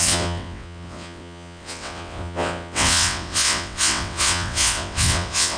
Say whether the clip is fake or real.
fake